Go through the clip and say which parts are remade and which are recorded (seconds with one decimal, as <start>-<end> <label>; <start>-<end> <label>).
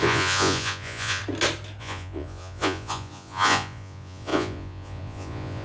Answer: 0.0-1.2 remade; 1.2-1.8 recorded; 1.8-5.6 remade